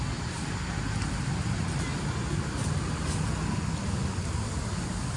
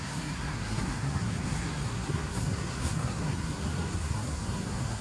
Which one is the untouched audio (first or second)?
first